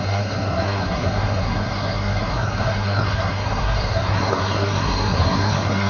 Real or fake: fake